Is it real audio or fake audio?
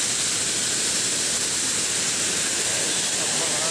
real